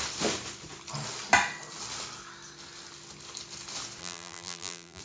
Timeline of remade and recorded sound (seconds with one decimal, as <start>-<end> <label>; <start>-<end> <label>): 0.0-4.0 recorded; 4.0-5.0 remade